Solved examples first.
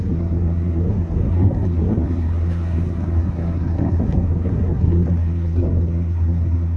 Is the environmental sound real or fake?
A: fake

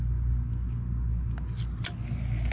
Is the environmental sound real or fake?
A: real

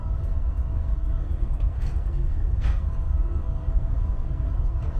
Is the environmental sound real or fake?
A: fake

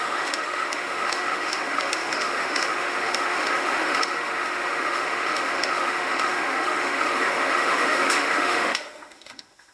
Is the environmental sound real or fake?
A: fake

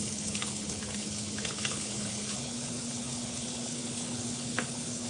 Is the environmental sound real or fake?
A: fake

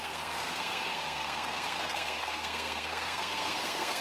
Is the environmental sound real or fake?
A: fake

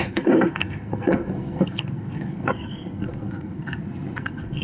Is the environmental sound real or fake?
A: fake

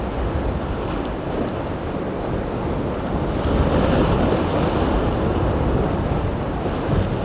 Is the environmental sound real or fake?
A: real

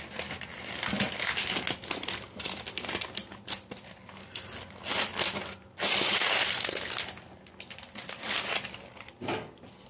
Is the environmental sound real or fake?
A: real